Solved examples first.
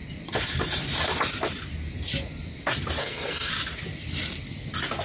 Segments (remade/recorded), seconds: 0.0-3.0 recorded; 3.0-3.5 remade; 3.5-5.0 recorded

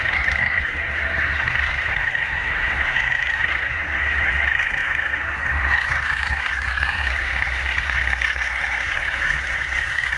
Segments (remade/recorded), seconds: 0.0-10.2 remade

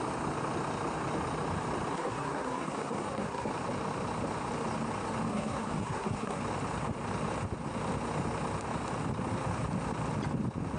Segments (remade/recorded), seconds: 0.0-1.9 recorded; 1.9-3.5 remade; 3.5-5.3 recorded; 5.3-6.4 remade; 6.4-10.8 recorded

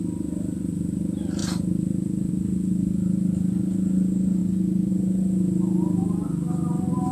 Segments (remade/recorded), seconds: 0.0-7.1 recorded

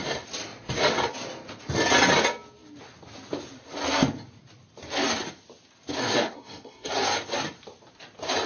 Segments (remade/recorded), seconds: 0.0-6.0 recorded; 6.0-6.9 remade; 6.9-8.5 recorded

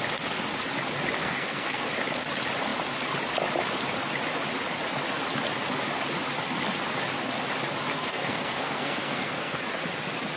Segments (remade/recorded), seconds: 0.0-1.2 recorded; 1.2-1.9 remade; 1.9-7.9 recorded; 7.9-9.6 remade; 9.6-10.4 recorded